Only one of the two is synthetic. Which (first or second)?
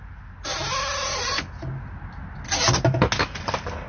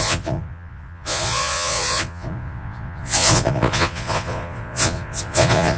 second